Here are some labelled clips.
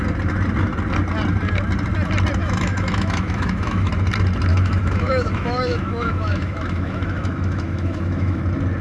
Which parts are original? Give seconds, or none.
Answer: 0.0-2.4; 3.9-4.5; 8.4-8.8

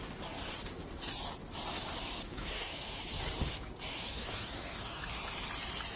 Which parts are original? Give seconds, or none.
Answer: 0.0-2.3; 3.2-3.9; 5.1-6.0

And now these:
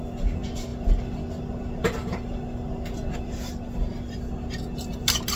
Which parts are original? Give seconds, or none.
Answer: 0.0-5.4